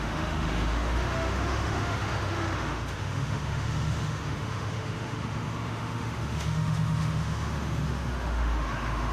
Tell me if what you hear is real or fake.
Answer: fake